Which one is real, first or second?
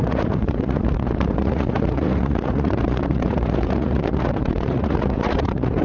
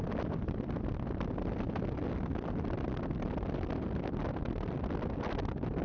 second